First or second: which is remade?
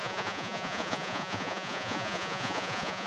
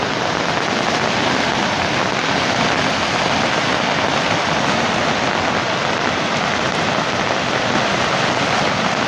first